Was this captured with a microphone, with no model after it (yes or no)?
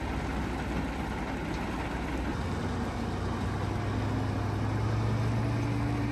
yes